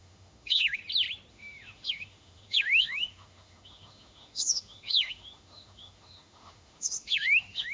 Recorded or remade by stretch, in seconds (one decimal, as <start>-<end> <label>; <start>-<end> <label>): 0.0-0.8 remade; 0.8-1.3 recorded; 1.3-7.7 remade